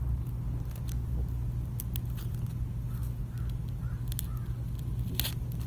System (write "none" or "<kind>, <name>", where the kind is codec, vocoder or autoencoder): none